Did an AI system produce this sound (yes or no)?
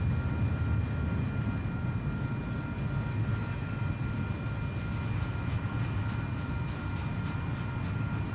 no